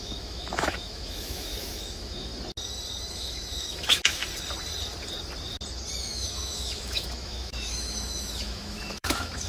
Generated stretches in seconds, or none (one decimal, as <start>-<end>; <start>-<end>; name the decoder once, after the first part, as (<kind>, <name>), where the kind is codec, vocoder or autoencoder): 0.0-2.3 (autoencoder, DAC-VAE); 3.1-4.2; 6.0-9.5